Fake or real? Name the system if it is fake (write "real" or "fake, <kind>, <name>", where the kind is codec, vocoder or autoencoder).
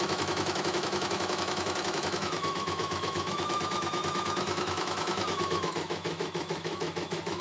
fake, autoencoder, DAC-VAE